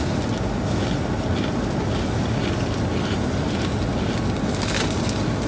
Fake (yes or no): no